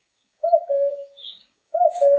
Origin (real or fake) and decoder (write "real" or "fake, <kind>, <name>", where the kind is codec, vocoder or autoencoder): fake, codec, DAC